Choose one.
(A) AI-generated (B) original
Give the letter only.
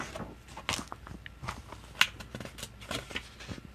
B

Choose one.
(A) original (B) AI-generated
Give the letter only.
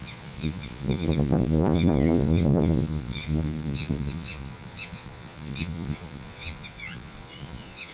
B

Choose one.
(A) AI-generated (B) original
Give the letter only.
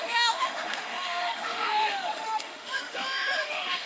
A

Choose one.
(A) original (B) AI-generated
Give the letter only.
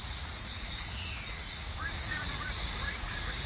B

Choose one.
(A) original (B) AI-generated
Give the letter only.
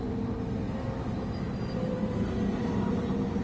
A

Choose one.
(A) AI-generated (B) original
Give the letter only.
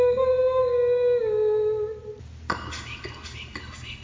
B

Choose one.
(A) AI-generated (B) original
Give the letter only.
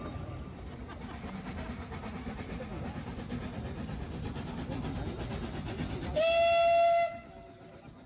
B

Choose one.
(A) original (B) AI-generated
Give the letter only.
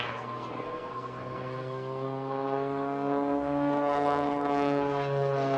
B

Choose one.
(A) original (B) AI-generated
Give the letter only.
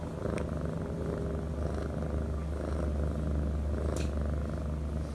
A